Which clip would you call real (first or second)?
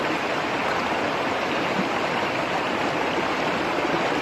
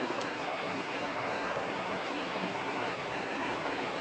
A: first